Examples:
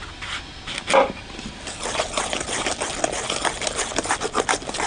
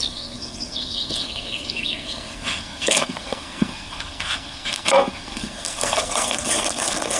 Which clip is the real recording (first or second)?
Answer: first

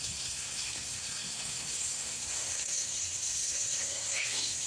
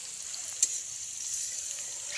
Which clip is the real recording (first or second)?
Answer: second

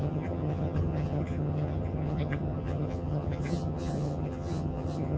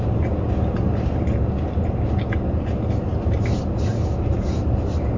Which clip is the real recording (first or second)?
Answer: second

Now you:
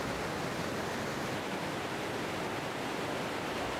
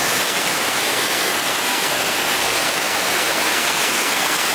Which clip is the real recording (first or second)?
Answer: first